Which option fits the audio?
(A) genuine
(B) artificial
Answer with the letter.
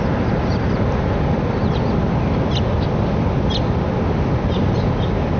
A